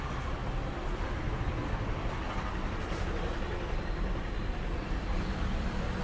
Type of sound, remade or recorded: remade